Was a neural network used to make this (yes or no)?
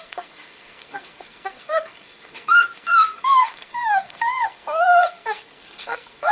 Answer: yes